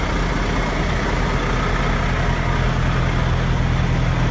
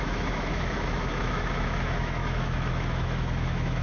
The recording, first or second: first